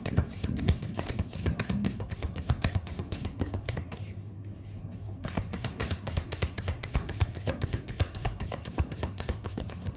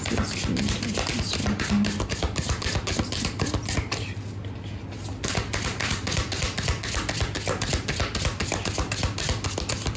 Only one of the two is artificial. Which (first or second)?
first